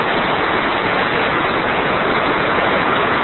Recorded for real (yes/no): no